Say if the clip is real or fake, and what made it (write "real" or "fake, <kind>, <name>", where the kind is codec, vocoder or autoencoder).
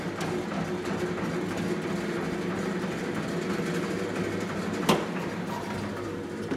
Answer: real